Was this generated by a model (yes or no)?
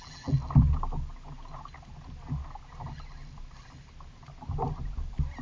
no